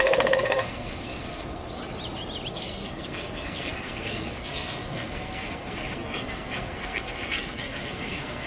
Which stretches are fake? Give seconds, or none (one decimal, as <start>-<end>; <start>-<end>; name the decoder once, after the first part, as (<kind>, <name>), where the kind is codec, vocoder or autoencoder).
0.0-1.8 (codec, SNAC); 2.5-8.5